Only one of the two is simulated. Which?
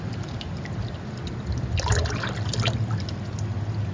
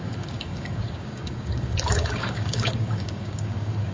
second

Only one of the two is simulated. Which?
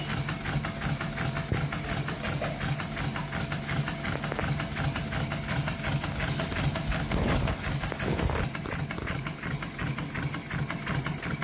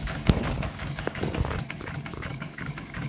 second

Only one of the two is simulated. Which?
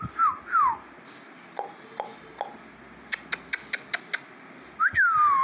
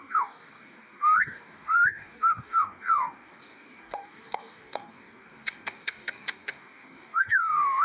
second